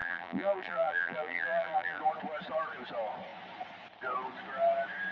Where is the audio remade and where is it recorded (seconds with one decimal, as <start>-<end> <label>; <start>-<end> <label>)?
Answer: 0.0-2.0 remade; 2.0-5.1 recorded